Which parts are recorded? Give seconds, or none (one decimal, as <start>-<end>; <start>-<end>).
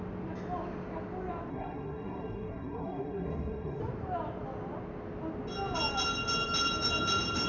0.0-1.5; 3.8-7.5